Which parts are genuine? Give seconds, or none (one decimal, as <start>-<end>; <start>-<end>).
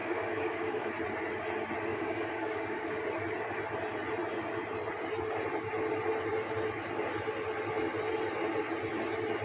0.9-1.9; 2.9-9.4